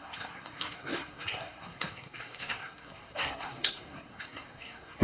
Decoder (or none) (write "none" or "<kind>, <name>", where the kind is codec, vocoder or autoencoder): codec, SNAC